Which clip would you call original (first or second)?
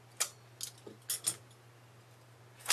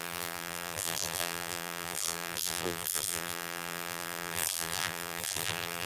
first